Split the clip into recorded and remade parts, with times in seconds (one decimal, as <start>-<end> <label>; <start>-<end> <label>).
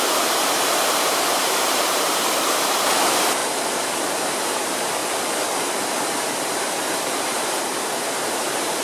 0.0-3.4 remade; 3.4-4.1 recorded; 4.1-5.0 remade; 5.0-5.9 recorded; 5.9-8.8 remade